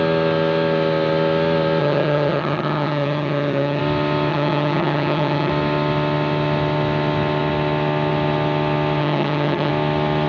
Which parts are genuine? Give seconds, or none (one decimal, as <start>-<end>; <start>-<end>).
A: 0.0-1.8; 3.8-4.3; 5.5-9.0; 9.7-10.3